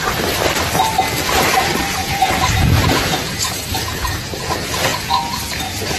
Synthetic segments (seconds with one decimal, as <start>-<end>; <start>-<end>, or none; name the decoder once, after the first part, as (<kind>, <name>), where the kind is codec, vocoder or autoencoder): 2.0-4.5 (vocoder, Vocos); 4.9-5.6